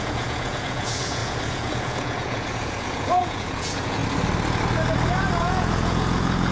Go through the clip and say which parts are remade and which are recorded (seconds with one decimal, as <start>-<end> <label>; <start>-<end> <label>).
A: 0.0-4.0 remade; 4.0-5.4 recorded; 5.4-6.5 remade